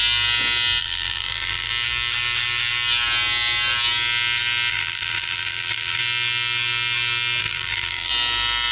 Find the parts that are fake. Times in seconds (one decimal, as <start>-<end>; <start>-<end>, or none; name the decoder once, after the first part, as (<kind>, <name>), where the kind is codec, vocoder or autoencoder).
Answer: 0.8-1.7 (vocoder, BigVGAN v2); 4.7-6.0; 7.4-8.1